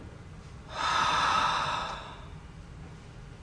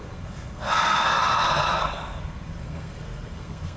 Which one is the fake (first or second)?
second